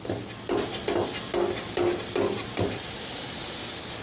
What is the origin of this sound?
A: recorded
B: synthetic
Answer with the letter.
A